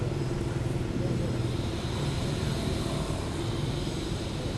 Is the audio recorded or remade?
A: recorded